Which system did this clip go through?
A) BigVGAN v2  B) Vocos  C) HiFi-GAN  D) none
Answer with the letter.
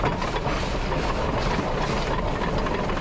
D